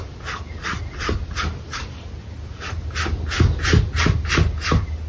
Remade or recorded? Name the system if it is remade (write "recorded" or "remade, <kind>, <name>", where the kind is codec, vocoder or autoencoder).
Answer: recorded